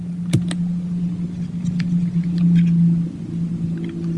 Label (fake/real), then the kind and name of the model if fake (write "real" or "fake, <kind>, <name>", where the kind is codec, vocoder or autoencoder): real